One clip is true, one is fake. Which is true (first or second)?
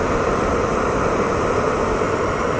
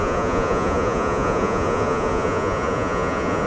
first